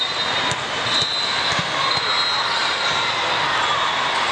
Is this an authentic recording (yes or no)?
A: yes